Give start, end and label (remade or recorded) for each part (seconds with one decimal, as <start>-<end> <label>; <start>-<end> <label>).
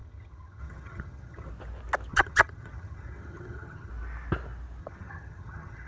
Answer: 0.0-1.5 remade; 1.5-2.1 recorded; 2.1-3.9 remade; 3.9-4.8 recorded; 4.8-5.9 remade